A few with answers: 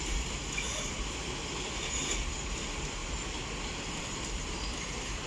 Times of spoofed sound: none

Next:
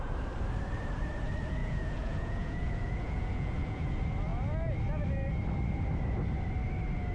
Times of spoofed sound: 1.6-3.9 (vocoder, Vocos)

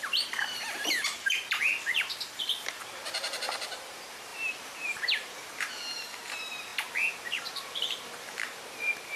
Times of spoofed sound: 0.0-9.2 (vocoder, BigVGAN v2)

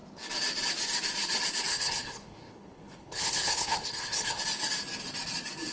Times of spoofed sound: 1.7-4.4 (codec, HILCodec)

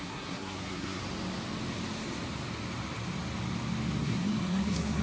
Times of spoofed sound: 0.0-1.0 (codec, SNAC); 4.0-5.0

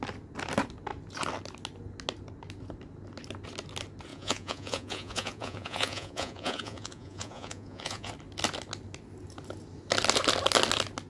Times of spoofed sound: 4.1-8.1 (vocoder, Vocos)

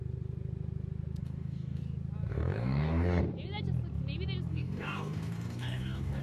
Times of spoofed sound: 1.2-1.8 (codec, DAC); 2.3-3.2; 4.5-6.2